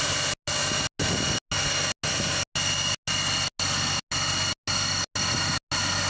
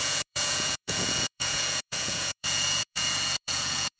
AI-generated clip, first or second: second